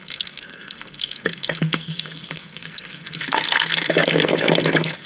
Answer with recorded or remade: remade